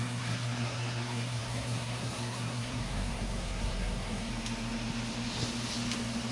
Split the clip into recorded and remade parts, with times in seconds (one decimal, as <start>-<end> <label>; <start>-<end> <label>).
0.0-4.3 remade; 4.3-6.3 recorded